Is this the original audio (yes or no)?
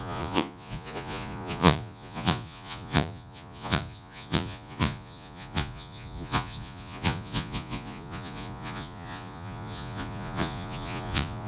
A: no